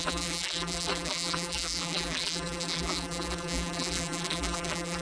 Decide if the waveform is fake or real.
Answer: fake